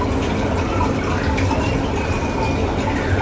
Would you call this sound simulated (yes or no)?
no